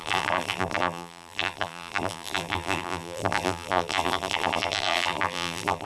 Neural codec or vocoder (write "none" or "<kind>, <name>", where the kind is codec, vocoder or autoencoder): vocoder, BigVGAN v2